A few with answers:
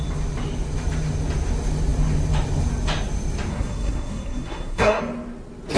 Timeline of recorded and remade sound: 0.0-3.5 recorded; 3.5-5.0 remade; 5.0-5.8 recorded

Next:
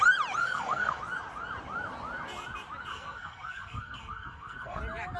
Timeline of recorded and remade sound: 0.0-0.4 recorded; 0.4-1.0 remade; 1.0-2.9 recorded; 2.9-4.8 remade; 4.8-5.2 recorded

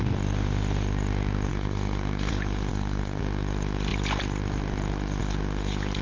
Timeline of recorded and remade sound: 0.0-1.5 recorded; 1.5-2.3 remade; 2.3-2.7 recorded; 2.7-3.2 remade; 3.2-6.0 recorded

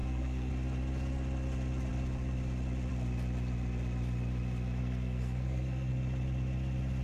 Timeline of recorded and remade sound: 0.0-0.5 remade; 0.5-4.8 recorded; 4.8-5.9 remade; 5.9-7.0 recorded

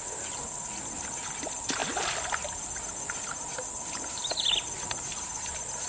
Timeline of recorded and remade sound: 0.0-5.9 recorded